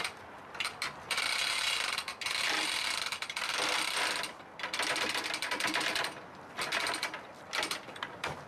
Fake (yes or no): no